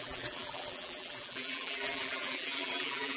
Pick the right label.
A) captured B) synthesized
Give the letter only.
B